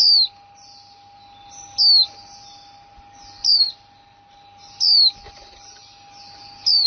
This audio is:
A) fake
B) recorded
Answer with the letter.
B